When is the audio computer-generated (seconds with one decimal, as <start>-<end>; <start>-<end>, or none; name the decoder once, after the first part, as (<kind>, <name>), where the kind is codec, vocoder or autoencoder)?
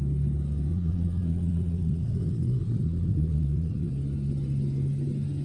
0.7-3.9 (vocoder, Vocos)